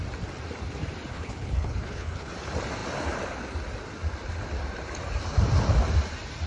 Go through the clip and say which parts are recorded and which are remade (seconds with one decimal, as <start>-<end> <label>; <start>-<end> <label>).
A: 0.0-1.1 recorded; 1.1-2.3 remade; 2.3-6.5 recorded